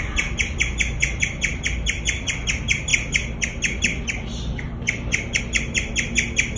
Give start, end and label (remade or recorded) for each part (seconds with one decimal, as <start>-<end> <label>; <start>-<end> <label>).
0.0-6.6 recorded